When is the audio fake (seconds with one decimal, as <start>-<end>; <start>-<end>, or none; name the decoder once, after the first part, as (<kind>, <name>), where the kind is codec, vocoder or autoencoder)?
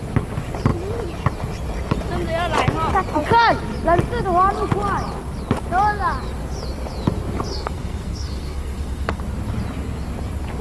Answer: 7.5-9.2 (codec, SNAC)